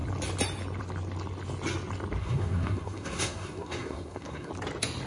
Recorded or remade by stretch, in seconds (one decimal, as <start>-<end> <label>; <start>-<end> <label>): 0.0-2.2 recorded; 2.2-4.5 remade; 4.5-5.1 recorded